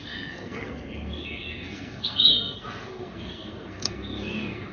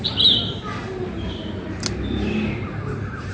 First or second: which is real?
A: second